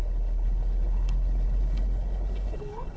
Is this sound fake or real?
fake